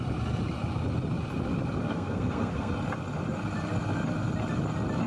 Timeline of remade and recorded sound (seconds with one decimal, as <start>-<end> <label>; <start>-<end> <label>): 0.0-1.8 recorded; 1.8-2.7 remade; 2.7-5.1 recorded